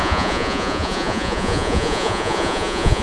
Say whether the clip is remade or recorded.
remade